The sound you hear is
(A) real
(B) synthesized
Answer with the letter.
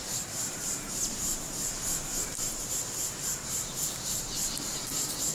B